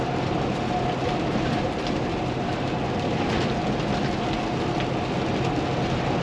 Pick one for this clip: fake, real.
real